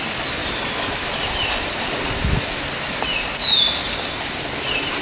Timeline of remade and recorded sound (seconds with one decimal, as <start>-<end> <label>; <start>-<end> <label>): 0.0-5.0 recorded